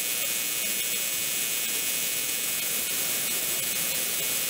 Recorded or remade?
recorded